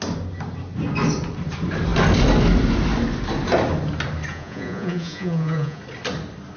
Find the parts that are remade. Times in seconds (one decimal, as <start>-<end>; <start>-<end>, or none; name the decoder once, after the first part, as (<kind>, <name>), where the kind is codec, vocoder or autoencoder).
4.3-5.8 (vocoder, Vocos)